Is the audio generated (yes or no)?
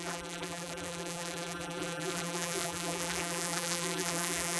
yes